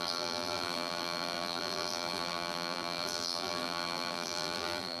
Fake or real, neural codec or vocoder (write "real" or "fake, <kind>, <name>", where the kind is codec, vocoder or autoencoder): fake, vocoder, BigVGAN v2